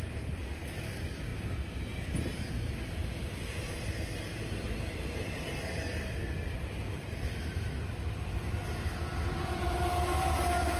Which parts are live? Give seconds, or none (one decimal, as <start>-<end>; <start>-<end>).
0.0-10.8